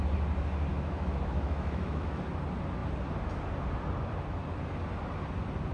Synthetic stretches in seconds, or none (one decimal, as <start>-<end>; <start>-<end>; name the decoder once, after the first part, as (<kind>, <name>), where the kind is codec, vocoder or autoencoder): 0.7-2.2 (autoencoder, DAC-VAE)